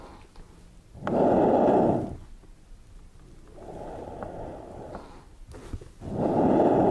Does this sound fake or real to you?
real